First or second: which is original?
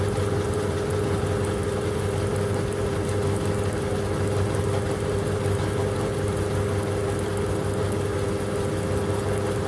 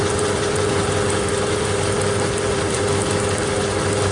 first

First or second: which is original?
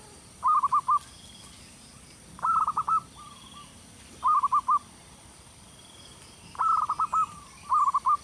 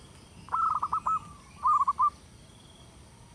second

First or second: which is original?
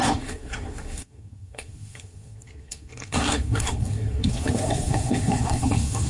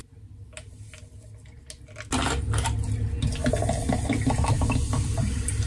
second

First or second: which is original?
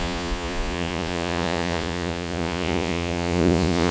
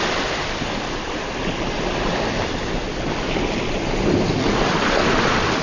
second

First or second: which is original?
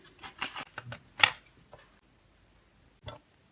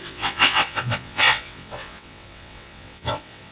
first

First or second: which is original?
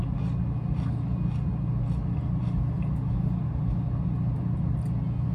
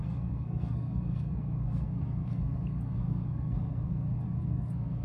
first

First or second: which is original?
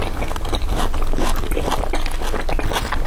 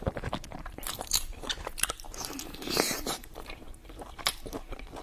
first